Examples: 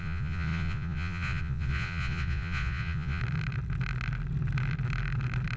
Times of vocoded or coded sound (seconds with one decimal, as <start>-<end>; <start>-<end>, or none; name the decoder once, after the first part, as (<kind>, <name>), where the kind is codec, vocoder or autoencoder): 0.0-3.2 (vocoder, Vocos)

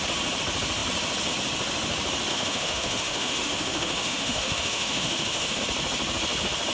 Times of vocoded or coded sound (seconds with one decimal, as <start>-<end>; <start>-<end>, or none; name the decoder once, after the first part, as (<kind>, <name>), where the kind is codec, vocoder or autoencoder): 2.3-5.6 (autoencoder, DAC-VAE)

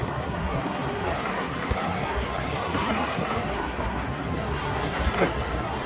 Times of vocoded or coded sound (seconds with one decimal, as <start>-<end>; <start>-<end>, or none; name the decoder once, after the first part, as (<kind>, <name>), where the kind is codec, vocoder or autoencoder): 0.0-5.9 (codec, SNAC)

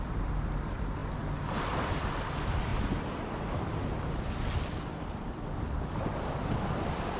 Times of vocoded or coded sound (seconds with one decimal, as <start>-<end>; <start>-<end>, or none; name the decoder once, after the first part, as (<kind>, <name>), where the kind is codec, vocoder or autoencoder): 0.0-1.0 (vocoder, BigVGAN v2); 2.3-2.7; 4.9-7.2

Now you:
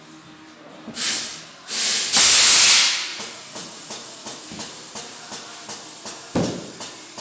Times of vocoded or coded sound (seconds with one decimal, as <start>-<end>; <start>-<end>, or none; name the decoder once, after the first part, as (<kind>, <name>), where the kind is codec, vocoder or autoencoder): 3.1-4.4 (vocoder, Vocos)

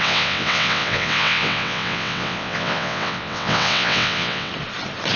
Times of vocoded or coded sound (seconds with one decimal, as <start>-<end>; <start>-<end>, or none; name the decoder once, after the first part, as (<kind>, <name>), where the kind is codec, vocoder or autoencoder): 0.0-4.5 (vocoder, WaveNeXt)

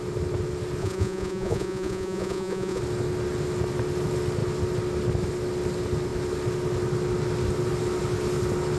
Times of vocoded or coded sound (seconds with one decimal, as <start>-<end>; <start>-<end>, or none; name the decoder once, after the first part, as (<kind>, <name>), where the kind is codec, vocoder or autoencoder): 0.8-2.8 (vocoder, Vocos)